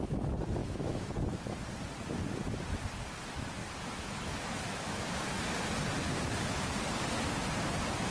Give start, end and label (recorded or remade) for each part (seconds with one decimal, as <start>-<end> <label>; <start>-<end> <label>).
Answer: 0.0-0.6 recorded; 0.6-1.1 remade; 1.1-3.6 recorded; 3.6-5.0 remade; 5.0-8.1 recorded